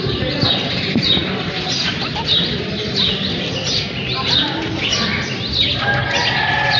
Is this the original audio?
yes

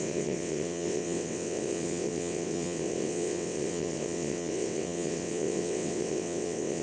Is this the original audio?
no